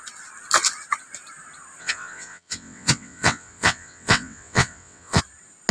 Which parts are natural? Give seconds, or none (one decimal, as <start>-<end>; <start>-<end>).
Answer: 0.0-1.8; 5.2-5.7